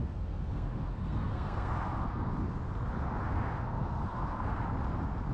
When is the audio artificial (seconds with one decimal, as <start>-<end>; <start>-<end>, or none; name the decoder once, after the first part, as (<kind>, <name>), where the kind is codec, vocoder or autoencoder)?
0.0-2.3 (codec, SNAC); 3.2-4.6